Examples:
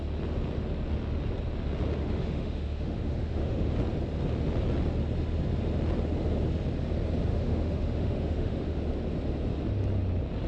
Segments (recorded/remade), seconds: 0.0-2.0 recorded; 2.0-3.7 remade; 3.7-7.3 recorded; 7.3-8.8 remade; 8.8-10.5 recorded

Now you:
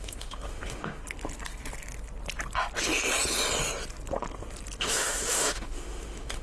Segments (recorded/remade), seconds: 0.0-1.0 remade; 1.0-4.8 recorded; 4.8-6.4 remade

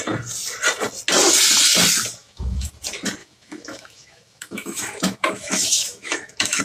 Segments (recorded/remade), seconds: 0.0-2.2 recorded; 2.2-2.7 remade; 2.7-3.2 recorded; 3.2-6.6 remade

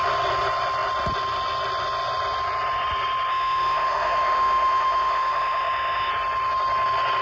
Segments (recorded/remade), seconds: 0.0-3.3 recorded; 3.3-6.1 remade; 6.1-7.2 recorded

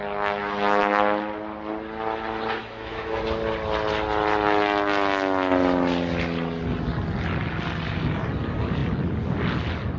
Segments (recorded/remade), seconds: 0.0-2.6 recorded; 2.6-3.2 remade; 3.2-10.0 recorded

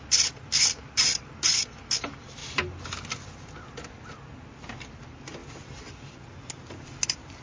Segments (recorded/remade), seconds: 0.0-7.4 recorded

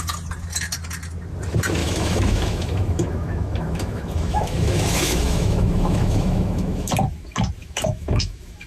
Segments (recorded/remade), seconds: 0.0-1.8 recorded; 1.8-6.9 remade; 6.9-7.6 recorded; 7.6-8.7 remade

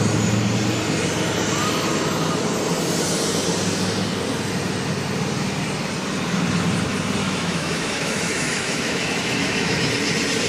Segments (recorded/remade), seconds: 0.0-7.2 recorded; 7.2-9.9 remade; 9.9-10.5 recorded